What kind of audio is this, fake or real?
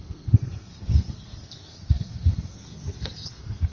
fake